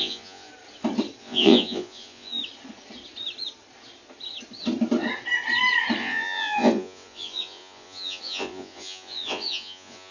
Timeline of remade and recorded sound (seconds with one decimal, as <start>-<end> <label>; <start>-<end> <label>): 0.0-0.5 remade; 0.5-1.2 recorded; 1.2-2.4 remade; 2.4-6.0 recorded; 6.0-10.1 remade